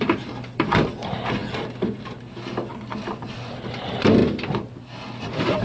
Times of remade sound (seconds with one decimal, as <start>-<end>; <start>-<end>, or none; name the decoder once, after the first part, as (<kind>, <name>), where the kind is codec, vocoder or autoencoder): 0.0-1.4 (vocoder, BigVGAN v2); 2.7-4.2